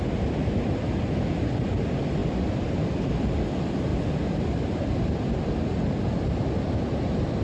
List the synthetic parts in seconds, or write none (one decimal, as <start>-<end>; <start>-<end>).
none

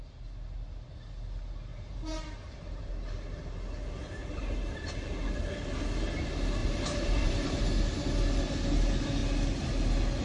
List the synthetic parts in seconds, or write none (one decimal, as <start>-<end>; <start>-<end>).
1.7-2.9; 4.2-5.5; 6.6-7.6

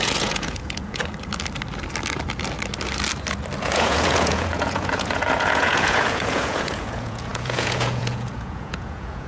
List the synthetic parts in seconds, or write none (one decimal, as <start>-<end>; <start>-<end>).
0.0-1.0; 3.6-9.3

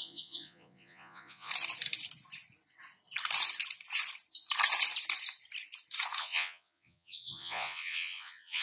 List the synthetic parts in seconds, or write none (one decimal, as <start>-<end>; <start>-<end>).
0.0-1.5; 6.2-8.6

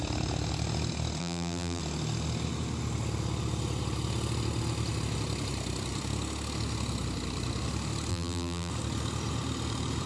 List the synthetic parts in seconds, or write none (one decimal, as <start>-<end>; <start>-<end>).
1.2-1.8; 8.1-8.7

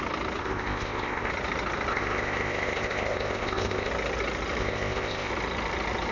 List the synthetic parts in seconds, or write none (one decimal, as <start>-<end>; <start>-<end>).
0.4-1.3; 1.9-3.9; 4.6-5.3

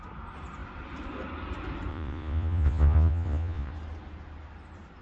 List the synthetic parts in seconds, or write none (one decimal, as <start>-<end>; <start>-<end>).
1.9-3.7